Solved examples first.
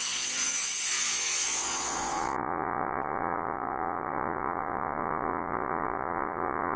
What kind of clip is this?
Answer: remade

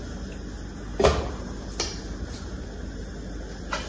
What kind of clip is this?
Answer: recorded